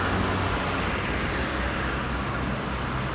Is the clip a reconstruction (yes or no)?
no